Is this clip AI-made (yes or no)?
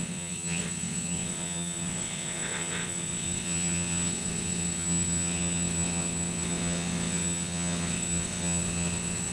yes